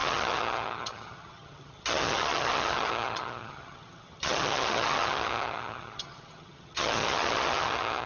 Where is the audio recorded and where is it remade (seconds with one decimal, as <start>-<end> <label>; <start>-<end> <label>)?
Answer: 0.0-8.1 remade